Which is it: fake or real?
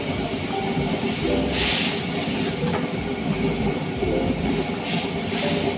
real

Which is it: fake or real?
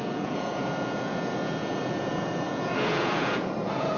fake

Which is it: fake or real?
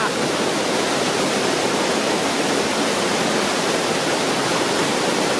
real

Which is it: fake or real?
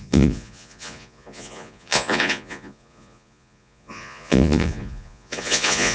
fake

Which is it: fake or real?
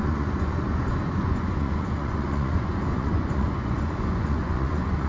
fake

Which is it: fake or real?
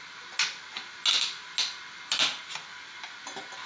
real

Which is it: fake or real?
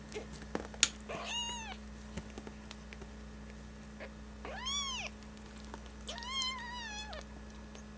real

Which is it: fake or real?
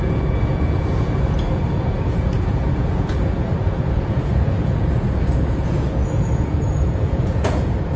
fake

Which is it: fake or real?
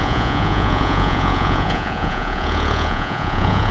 fake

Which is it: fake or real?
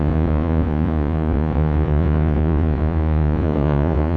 fake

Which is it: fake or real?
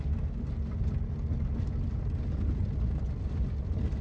real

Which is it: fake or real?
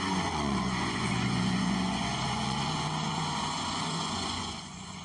fake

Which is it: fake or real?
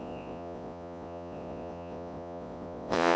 fake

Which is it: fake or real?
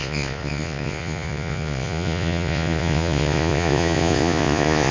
fake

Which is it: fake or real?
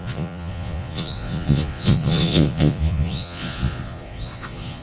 fake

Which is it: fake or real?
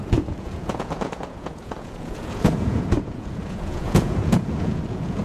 fake